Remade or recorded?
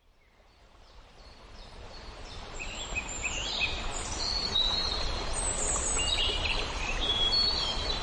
remade